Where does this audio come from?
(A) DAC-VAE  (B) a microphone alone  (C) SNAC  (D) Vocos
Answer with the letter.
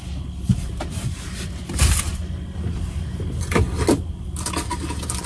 B